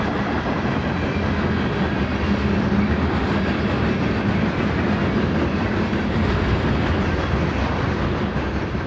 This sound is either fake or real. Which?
real